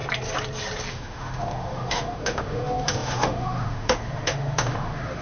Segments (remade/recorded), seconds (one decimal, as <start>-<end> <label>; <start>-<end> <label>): 0.0-0.9 recorded; 0.9-5.2 remade